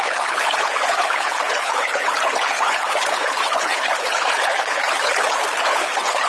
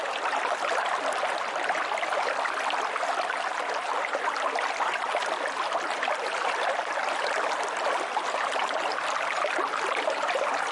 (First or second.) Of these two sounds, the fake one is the first